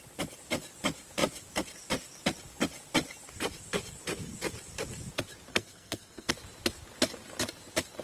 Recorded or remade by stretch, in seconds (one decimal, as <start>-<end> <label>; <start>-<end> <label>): 0.0-5.5 recorded; 5.5-6.3 remade; 6.3-8.0 recorded